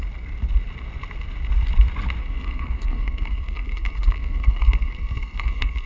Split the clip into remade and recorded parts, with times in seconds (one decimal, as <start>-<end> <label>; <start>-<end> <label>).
0.0-2.2 recorded; 2.2-5.9 remade